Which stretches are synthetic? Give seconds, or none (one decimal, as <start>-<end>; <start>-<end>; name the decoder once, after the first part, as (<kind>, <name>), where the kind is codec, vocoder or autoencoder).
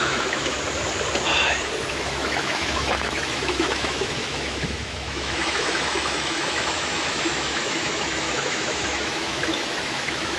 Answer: 0.0-0.5 (autoencoder, DAC-VAE); 1.9-10.4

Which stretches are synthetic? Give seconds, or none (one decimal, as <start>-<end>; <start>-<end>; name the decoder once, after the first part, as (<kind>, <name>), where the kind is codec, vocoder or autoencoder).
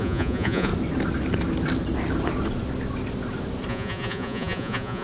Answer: 0.0-0.7 (vocoder, Vocos); 3.7-5.0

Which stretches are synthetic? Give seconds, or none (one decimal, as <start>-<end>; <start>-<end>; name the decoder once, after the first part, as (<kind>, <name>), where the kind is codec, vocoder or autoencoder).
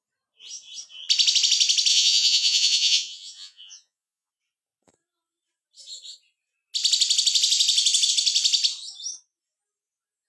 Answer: 1.9-4.3 (vocoder, Vocos)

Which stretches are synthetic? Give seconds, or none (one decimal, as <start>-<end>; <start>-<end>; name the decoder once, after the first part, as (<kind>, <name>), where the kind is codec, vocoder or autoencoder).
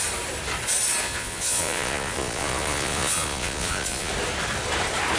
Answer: 1.0-4.1 (vocoder, Vocos)